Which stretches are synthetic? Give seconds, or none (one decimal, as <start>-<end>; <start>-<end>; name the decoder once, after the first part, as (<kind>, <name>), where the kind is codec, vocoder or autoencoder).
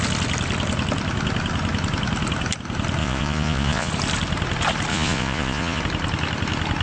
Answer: 3.0-3.9 (vocoder, Vocos); 4.9-5.8